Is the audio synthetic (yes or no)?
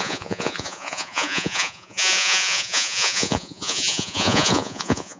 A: yes